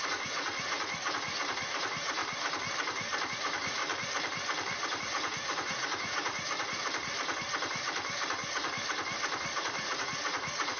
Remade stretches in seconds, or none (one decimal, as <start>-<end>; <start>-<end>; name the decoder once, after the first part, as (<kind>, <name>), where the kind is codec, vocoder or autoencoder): 0.0-2.2 (vocoder, Vocos); 3.3-3.8; 5.0-6.8; 9.5-10.8